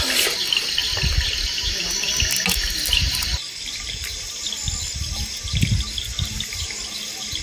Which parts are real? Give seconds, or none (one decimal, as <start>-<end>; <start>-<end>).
0.0-7.4